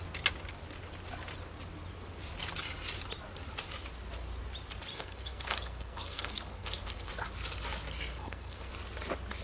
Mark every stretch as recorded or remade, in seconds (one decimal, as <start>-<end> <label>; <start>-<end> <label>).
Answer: 0.0-4.9 recorded; 4.9-7.1 remade; 7.1-8.1 recorded; 8.1-8.7 remade; 8.7-9.4 recorded